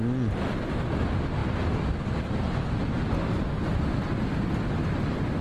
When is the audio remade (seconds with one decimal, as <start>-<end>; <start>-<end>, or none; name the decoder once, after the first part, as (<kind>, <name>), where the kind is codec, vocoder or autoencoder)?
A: none